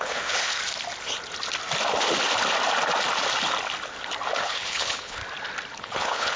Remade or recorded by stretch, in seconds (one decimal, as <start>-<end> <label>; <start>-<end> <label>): 0.0-0.6 remade; 0.6-4.4 recorded; 4.4-5.2 remade; 5.2-5.8 recorded; 5.8-6.4 remade